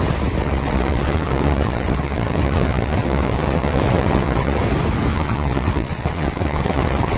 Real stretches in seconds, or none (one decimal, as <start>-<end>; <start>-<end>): 0.0-0.4; 4.6-5.1